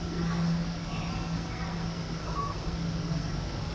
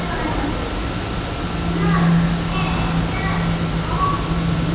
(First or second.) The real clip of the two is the second